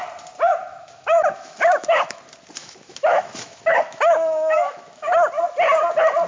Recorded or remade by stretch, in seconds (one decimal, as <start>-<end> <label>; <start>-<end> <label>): 0.0-0.7 recorded; 0.7-2.2 remade; 2.2-2.6 recorded; 2.6-5.1 remade; 5.1-6.3 recorded